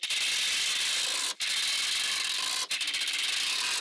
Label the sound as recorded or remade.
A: recorded